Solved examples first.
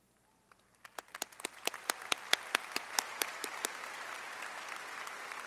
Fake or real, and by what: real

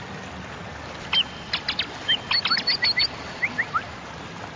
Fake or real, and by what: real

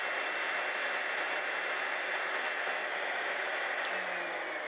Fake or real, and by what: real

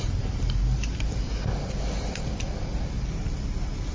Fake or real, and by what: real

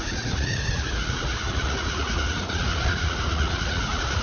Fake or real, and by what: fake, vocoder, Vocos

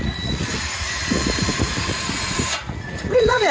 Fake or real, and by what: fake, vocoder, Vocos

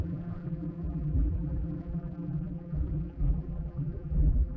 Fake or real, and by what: fake, vocoder, BigVGAN v2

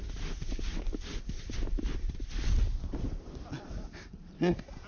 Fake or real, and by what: real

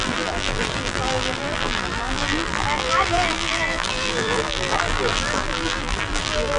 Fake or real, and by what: fake, vocoder, BigVGAN v2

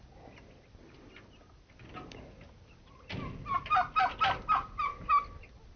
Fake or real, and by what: real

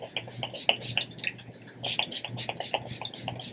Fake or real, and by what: real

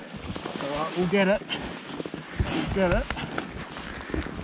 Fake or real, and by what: real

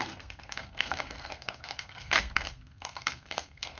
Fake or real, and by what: fake, codec, SNAC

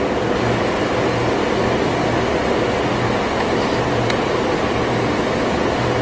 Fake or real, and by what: real